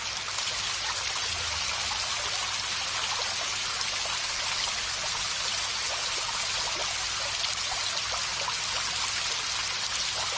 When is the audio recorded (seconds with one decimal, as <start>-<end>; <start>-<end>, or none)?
0.0-10.4